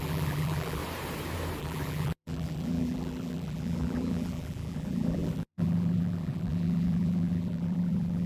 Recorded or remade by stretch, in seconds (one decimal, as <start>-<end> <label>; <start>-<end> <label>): 0.0-0.8 remade; 0.8-1.6 recorded; 1.6-8.3 remade